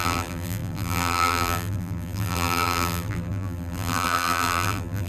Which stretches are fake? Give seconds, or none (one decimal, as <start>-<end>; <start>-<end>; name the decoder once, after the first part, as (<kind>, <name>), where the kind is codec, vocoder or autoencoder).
0.0-5.1 (vocoder, BigVGAN v2)

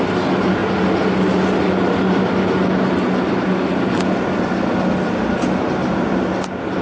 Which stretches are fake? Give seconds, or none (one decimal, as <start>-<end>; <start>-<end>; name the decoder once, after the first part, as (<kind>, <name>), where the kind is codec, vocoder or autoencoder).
none

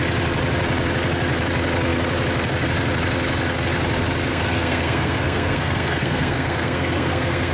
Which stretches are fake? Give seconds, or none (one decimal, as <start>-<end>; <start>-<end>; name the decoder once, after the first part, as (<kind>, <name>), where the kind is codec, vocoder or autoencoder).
4.3-7.5 (codec, SNAC)